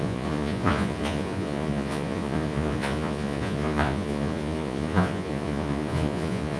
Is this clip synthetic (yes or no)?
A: yes